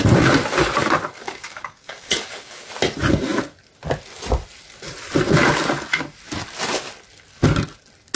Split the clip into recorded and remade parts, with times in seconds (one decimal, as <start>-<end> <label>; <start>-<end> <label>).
0.0-1.2 recorded; 1.2-2.7 remade; 2.7-8.2 recorded